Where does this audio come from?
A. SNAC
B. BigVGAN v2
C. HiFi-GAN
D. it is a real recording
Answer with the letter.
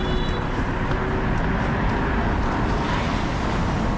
D